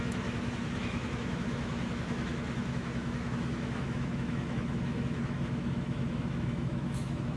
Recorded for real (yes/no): no